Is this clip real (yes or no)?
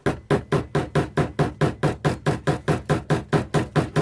yes